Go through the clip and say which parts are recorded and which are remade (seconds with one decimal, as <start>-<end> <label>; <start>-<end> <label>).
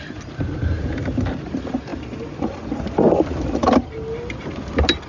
0.0-5.1 recorded